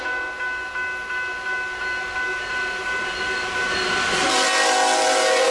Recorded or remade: recorded